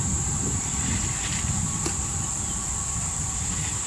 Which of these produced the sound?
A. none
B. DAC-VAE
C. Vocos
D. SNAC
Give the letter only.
A